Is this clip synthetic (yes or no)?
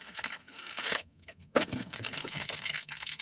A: yes